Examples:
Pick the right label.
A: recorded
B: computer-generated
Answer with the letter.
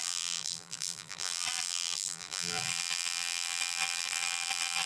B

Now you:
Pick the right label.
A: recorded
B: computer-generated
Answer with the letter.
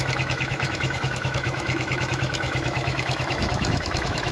B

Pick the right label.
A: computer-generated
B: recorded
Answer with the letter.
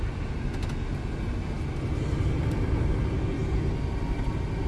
B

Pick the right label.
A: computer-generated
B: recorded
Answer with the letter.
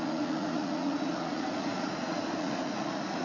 A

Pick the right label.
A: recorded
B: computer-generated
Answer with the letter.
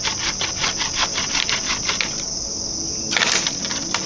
A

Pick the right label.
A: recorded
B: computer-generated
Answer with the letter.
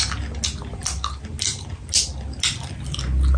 A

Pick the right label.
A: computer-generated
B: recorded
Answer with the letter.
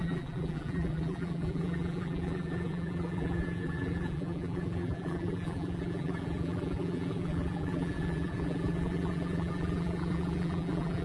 A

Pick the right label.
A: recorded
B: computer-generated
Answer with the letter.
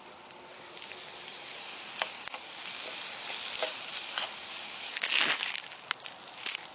A